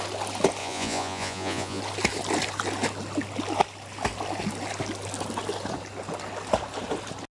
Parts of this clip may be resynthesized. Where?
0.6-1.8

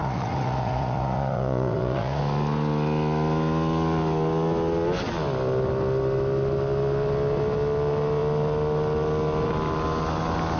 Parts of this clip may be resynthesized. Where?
0.0-2.2

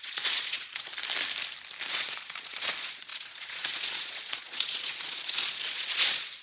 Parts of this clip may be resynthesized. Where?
0.0-0.9; 1.9-6.4

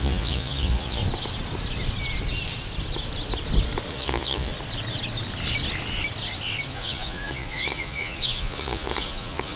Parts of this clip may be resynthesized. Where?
0.0-1.0; 3.9-4.5; 6.7-9.6

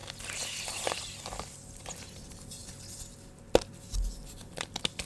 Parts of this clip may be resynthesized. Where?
none

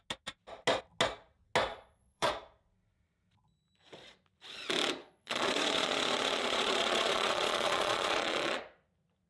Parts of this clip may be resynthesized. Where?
1.7-2.3; 5.0-8.6